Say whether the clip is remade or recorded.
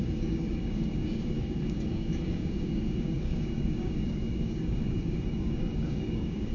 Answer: remade